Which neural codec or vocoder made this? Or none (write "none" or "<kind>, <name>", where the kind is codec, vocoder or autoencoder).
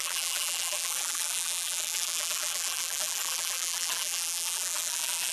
vocoder, BigVGAN v2